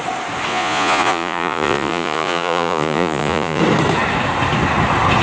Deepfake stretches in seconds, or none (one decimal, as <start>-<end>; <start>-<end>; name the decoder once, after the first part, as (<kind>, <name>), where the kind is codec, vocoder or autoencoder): 0.5-3.6 (vocoder, Vocos)